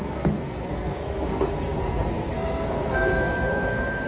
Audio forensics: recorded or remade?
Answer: remade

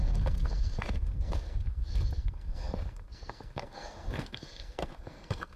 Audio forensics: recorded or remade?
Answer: remade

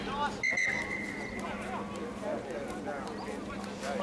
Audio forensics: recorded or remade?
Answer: recorded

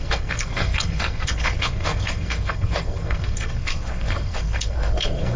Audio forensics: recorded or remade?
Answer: remade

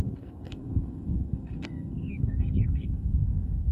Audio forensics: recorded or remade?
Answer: remade